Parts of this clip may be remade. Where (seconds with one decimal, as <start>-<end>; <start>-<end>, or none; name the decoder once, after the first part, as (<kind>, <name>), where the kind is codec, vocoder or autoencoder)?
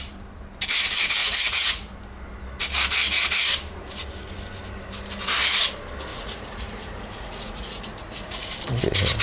1.2-1.9 (vocoder, Vocos); 6.1-8.5